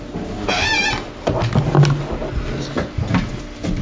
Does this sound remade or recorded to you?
recorded